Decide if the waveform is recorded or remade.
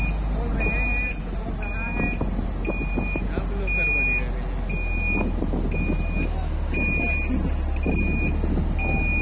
recorded